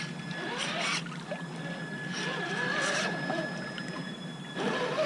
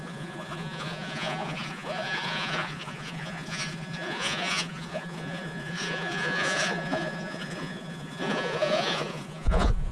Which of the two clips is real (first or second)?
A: first